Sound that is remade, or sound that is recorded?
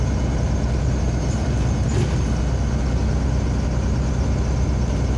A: recorded